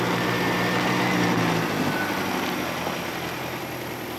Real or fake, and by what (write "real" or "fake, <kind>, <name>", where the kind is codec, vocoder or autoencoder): real